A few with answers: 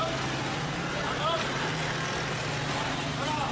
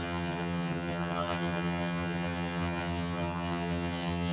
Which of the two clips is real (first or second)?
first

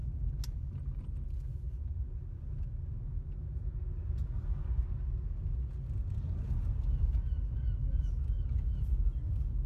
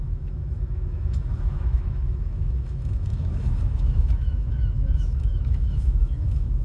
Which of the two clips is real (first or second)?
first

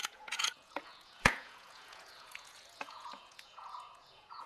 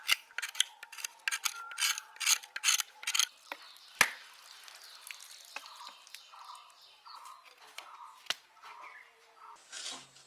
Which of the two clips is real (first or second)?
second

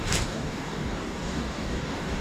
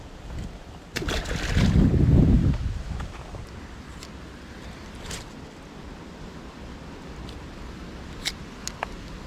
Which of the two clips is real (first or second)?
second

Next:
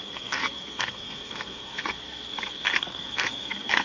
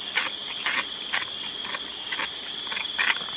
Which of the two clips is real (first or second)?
second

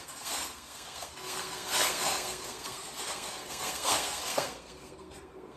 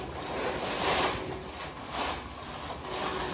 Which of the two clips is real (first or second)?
second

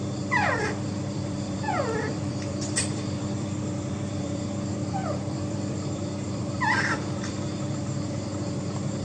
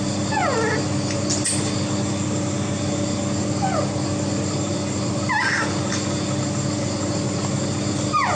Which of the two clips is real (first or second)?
second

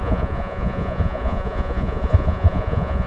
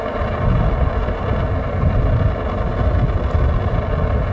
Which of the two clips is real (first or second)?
second